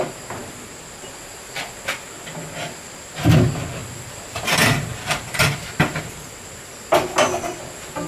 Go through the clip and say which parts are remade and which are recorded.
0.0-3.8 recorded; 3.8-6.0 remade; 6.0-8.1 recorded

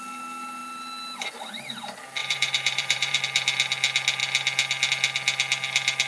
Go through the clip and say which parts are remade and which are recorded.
0.0-2.2 recorded; 2.2-3.2 remade; 3.2-6.1 recorded

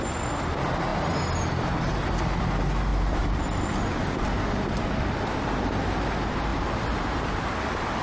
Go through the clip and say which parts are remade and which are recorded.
0.0-2.9 recorded; 2.9-5.9 remade; 5.9-6.5 recorded; 6.5-8.0 remade

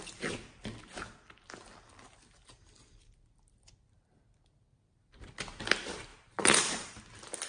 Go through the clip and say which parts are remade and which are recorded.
0.0-6.1 recorded; 6.1-7.0 remade; 7.0-7.5 recorded

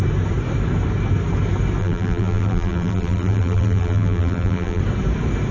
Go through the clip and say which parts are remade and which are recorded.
0.0-1.8 recorded; 1.8-4.8 remade; 4.8-5.5 recorded

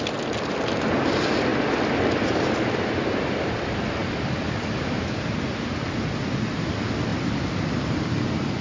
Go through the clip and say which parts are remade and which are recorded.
0.0-1.5 remade; 1.5-2.1 recorded; 2.1-4.0 remade; 4.0-5.6 recorded; 5.6-8.6 remade

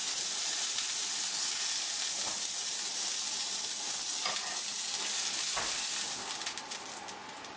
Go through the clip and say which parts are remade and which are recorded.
0.0-1.3 remade; 1.3-7.6 recorded

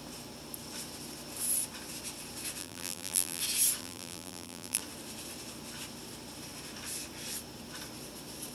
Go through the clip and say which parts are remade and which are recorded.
0.0-2.6 recorded; 2.6-3.4 remade; 3.4-3.8 recorded; 3.8-4.8 remade; 4.8-8.5 recorded